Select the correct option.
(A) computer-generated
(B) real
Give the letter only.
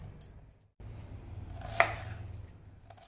B